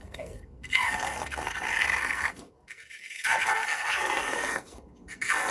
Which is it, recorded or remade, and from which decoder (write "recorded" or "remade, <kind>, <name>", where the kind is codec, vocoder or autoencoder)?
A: remade, codec, SNAC